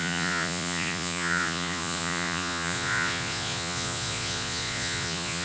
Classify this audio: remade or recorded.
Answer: remade